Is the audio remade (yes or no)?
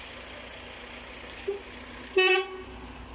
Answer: no